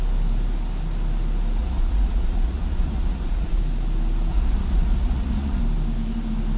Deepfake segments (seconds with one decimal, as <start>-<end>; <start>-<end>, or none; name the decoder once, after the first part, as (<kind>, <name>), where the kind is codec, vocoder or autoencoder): 1.6-3.6 (vocoder, Vocos); 4.3-5.6